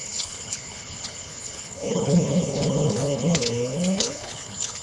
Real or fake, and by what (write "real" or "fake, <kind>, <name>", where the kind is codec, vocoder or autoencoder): fake, codec, HILCodec